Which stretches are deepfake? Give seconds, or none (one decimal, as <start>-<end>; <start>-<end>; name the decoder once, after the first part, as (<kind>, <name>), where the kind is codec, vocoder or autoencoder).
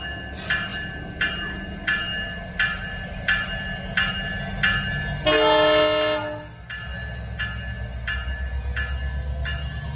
none